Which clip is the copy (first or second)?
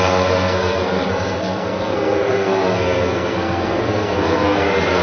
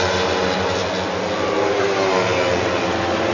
first